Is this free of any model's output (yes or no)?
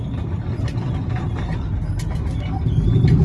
yes